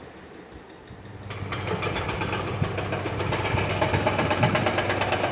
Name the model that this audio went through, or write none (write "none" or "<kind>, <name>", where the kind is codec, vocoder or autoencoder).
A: none